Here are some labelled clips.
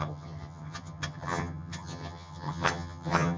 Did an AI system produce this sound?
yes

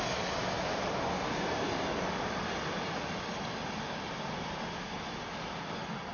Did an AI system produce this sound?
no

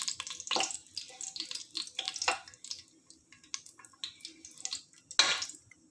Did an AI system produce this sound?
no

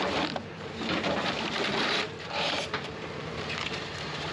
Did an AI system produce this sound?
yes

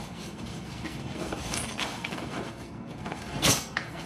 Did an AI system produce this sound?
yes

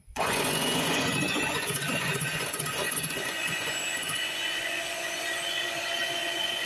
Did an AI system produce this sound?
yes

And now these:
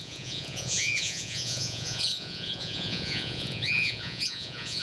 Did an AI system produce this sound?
yes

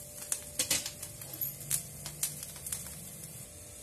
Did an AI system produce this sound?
no